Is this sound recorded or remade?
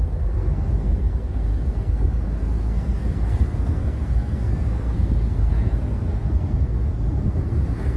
remade